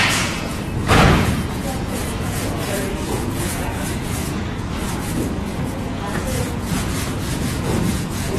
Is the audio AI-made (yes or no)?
yes